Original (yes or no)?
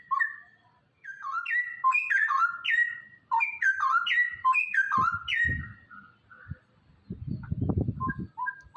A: yes